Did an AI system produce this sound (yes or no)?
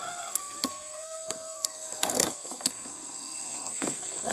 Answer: yes